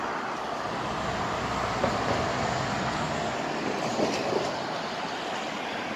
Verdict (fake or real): real